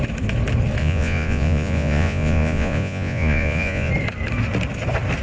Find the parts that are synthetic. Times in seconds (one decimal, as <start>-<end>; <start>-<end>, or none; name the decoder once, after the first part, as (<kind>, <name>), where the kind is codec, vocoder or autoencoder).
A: 0.8-3.9 (vocoder, Vocos)